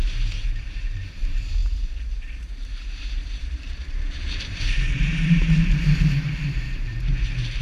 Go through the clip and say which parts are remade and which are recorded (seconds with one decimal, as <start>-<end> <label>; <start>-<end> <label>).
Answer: 0.0-7.6 remade